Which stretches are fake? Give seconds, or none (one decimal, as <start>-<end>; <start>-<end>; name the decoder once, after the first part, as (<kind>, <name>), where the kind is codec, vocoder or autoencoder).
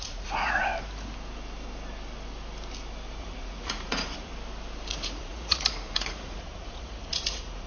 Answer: 0.0-0.7 (vocoder, Vocos); 3.2-4.3; 4.9-7.7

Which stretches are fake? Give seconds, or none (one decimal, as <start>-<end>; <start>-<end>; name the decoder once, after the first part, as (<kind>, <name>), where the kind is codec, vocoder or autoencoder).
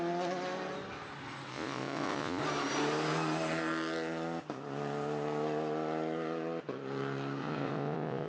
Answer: 1.5-2.4 (vocoder, Vocos); 7.4-8.3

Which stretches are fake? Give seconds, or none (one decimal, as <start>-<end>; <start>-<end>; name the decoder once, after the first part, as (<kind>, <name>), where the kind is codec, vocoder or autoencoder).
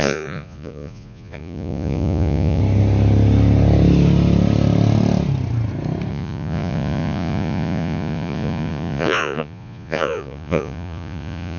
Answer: 0.0-2.6 (vocoder, Vocos); 6.1-11.6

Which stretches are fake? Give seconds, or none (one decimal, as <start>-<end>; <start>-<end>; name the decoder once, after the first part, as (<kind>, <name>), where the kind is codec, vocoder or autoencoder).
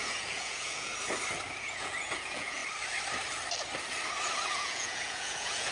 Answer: 0.0-0.9 (vocoder, Vocos); 1.6-2.6; 4.5-5.7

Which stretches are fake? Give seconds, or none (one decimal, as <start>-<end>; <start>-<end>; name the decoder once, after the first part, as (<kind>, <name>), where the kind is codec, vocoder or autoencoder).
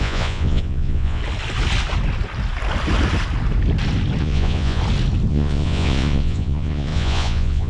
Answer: 0.0-1.2 (vocoder, Vocos); 4.2-4.8; 5.3-7.7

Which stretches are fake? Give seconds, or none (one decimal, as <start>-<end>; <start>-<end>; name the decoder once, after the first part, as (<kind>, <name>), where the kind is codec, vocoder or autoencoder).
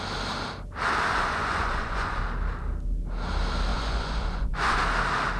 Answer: 1.1-2.2 (vocoder, Vocos); 3.7-4.8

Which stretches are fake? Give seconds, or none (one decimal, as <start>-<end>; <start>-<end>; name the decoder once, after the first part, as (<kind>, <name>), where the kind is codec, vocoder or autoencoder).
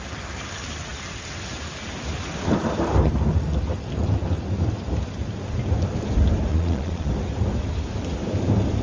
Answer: 6.5-7.1 (vocoder, Vocos)